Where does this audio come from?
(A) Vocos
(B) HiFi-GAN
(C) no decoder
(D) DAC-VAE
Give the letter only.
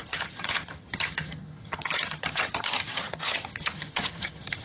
B